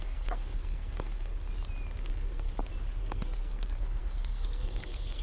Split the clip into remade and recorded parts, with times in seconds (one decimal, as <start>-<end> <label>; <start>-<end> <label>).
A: 0.0-1.3 remade; 1.3-2.1 recorded; 2.1-2.5 remade; 2.5-3.0 recorded; 3.0-5.2 remade